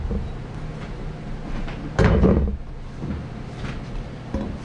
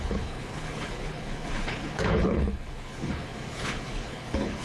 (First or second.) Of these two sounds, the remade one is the second